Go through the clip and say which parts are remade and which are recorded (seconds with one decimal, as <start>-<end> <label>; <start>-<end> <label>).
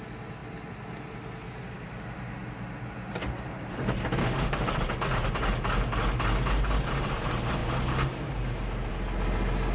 0.0-4.2 recorded; 4.2-4.7 remade; 4.7-9.7 recorded